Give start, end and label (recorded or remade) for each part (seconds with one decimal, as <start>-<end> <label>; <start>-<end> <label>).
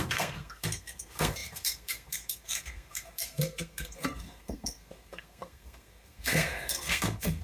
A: 0.0-7.4 remade